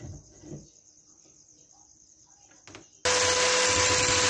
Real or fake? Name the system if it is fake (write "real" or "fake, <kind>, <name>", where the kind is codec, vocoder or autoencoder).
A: real